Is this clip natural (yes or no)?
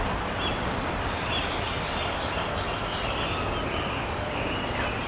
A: yes